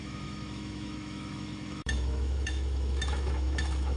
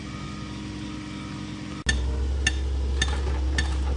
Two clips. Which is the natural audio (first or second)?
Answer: second